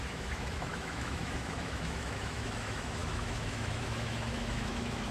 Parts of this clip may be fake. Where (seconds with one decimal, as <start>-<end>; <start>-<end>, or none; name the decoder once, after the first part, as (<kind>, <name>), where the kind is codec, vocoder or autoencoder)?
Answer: 0.0-5.1 (autoencoder, DAC-VAE)